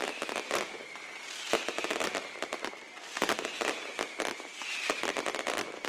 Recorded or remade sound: recorded